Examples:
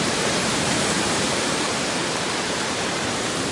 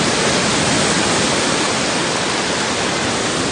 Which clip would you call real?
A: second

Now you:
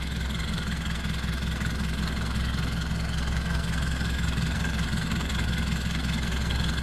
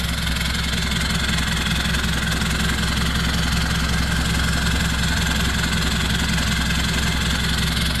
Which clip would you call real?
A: second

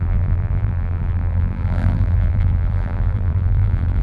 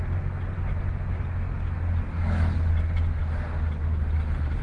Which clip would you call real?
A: second